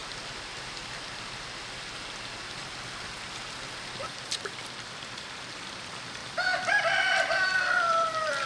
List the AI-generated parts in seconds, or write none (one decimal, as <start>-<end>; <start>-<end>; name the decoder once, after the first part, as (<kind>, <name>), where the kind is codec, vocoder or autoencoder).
4.3-6.2 (vocoder, BigVGAN v2); 6.8-8.5